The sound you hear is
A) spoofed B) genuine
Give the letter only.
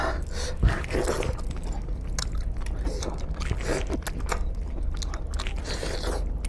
B